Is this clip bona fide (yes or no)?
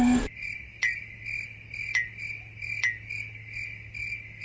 yes